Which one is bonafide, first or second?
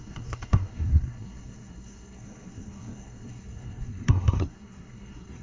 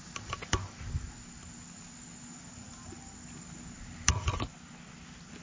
second